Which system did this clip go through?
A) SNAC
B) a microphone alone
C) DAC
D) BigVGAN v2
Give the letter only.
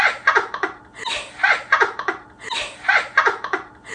D